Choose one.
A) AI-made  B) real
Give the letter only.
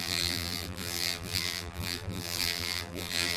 A